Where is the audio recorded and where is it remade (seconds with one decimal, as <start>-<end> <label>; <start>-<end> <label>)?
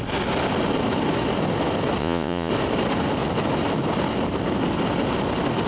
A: 0.0-2.0 recorded; 2.0-2.5 remade; 2.5-5.7 recorded